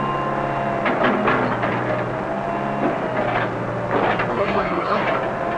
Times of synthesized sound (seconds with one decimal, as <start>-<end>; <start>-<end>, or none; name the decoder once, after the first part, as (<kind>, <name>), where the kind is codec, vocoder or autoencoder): 4.3-5.0 (codec, SNAC)